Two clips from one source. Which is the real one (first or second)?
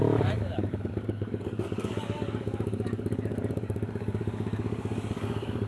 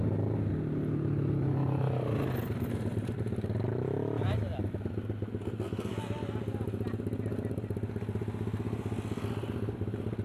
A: second